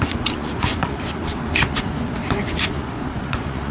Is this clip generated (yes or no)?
yes